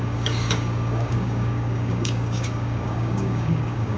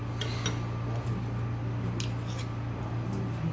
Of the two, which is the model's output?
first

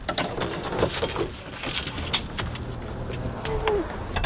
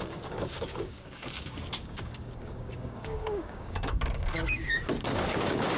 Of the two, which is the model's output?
second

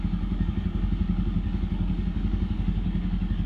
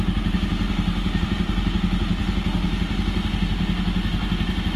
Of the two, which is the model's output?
first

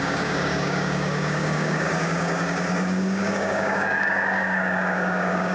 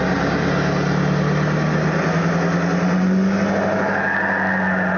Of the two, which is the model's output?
first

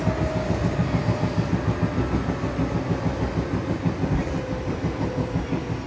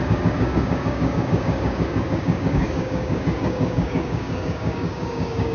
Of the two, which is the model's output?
second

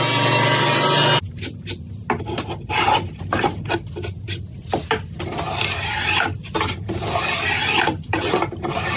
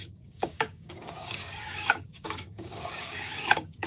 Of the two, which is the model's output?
second